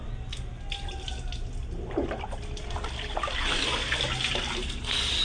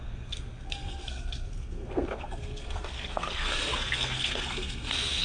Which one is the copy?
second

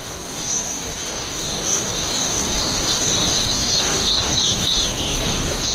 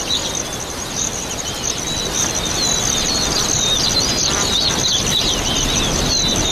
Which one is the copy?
first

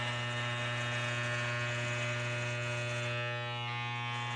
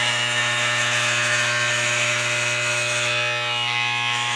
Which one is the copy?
second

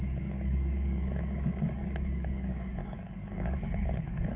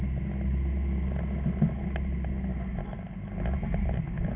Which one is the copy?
first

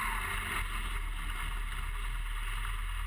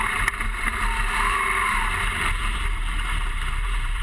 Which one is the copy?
second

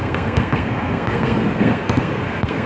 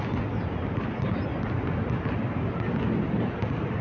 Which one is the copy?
first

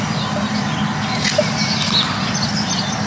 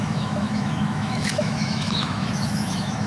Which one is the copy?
second